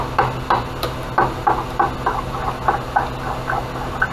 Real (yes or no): yes